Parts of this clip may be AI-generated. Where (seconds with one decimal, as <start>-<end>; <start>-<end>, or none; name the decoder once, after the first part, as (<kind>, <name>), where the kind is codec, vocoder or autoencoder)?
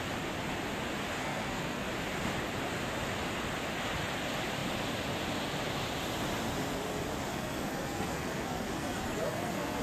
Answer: 1.2-1.9 (codec, SNAC); 7.3-9.8